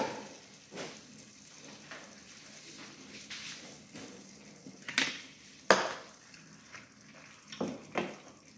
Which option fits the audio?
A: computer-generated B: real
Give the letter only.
B